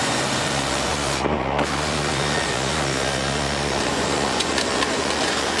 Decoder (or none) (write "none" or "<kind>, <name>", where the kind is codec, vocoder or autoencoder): vocoder, Vocos